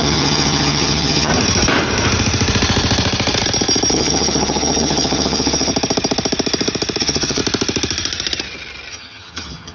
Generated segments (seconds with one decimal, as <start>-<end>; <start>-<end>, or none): 0.0-1.3; 3.9-5.7; 7.0-7.4; 8.9-9.7